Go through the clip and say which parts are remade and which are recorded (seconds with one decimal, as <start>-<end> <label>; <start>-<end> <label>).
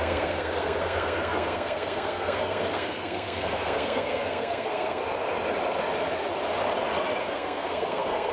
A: 0.0-5.0 remade; 5.0-7.2 recorded; 7.2-8.3 remade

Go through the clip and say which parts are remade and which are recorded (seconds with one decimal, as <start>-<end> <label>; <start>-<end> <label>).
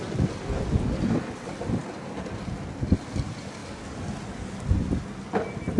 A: 0.0-1.8 recorded; 1.8-2.4 remade; 2.4-5.8 recorded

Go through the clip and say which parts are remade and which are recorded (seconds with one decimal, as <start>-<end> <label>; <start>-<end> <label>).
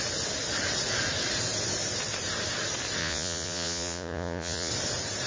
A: 0.0-3.0 recorded; 3.0-4.7 remade; 4.7-5.3 recorded